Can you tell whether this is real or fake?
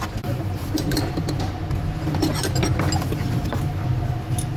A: real